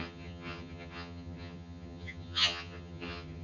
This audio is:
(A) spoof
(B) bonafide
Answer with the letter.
A